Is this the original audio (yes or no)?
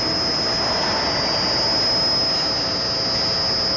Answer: yes